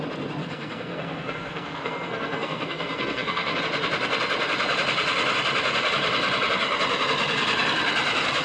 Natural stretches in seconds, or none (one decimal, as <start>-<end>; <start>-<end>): 0.0-0.4; 3.6-8.4